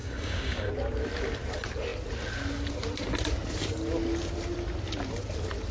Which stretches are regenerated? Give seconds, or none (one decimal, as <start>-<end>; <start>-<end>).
0.0-0.7